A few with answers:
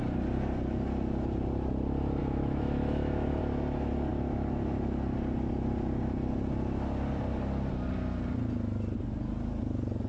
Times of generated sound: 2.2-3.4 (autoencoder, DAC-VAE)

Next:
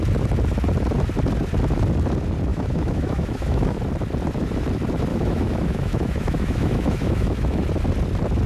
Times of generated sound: 2.5-3.8 (autoencoder, DAC-VAE); 5.1-7.6

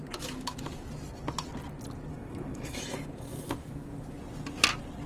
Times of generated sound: 2.1-2.8 (autoencoder, DAC-VAE)

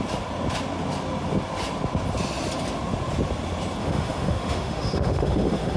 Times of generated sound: 3.8-5.8 (autoencoder, DAC-VAE)

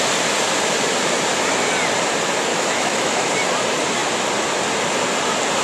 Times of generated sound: 2.5-3.3 (autoencoder, DAC-VAE)

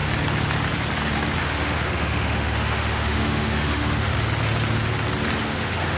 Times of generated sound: 1.4-4.1 (autoencoder, DAC-VAE); 5.4-6.0

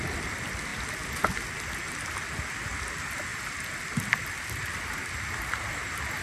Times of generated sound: none